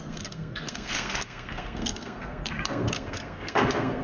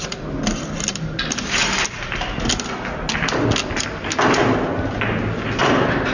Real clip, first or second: second